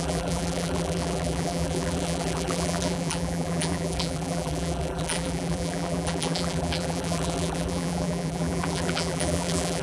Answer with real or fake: fake